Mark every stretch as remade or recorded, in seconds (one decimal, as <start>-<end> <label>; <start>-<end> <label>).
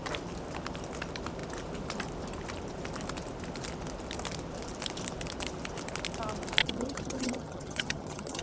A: 0.0-6.6 recorded; 6.6-8.4 remade